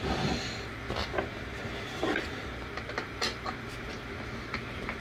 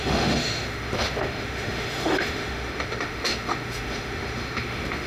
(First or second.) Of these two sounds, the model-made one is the second